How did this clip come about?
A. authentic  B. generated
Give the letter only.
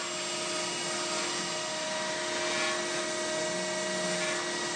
A